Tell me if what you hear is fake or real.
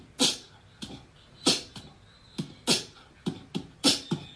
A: real